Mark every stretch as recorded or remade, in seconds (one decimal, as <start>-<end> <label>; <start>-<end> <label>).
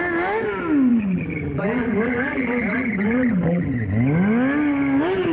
0.0-0.9 recorded; 0.9-3.7 remade; 3.7-5.3 recorded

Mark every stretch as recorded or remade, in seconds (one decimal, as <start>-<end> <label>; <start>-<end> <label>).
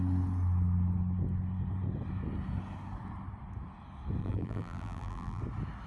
0.0-4.2 recorded; 4.2-5.4 remade; 5.4-5.9 recorded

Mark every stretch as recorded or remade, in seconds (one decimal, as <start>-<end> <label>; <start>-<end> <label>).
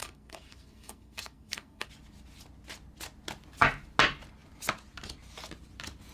0.0-1.9 remade; 1.9-6.1 recorded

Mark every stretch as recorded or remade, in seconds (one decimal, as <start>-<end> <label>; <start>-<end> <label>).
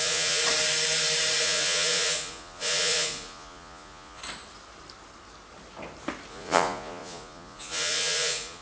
0.0-0.4 remade; 0.4-1.4 recorded; 1.4-4.2 remade; 4.2-6.3 recorded; 6.3-8.6 remade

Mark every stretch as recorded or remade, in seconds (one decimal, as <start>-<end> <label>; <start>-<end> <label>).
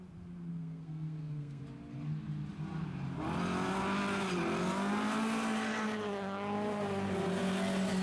0.0-0.5 recorded; 0.5-1.6 remade; 1.6-8.0 recorded